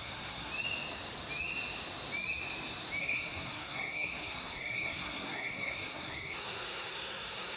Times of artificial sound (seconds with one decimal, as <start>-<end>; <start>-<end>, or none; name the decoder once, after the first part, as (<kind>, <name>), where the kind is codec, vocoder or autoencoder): 0.0-0.5 (codec, SNAC); 3.0-7.6